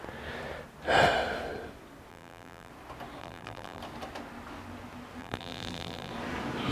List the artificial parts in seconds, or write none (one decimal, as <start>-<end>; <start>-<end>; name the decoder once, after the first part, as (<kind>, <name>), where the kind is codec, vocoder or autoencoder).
2.1-2.7 (vocoder, BigVGAN v2); 3.2-3.8; 5.2-6.1